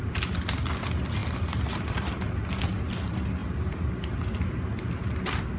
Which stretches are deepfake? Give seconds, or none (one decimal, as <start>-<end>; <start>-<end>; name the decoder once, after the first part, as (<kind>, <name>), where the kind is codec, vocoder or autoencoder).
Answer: none